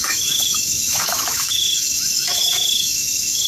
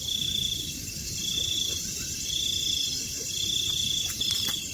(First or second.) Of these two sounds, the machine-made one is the first